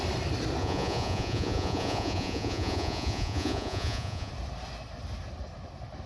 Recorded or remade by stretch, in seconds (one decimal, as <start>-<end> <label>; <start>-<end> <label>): 0.0-0.6 recorded; 0.6-4.3 remade; 4.3-6.1 recorded